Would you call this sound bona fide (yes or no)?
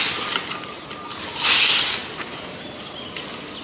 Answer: yes